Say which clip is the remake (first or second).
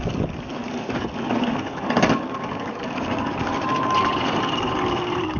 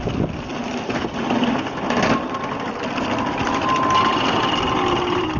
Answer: first